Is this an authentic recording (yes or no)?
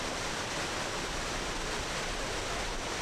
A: no